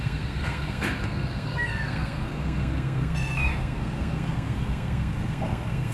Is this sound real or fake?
fake